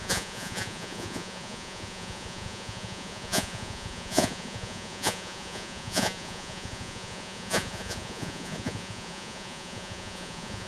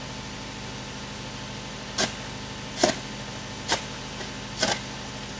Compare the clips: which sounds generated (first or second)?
first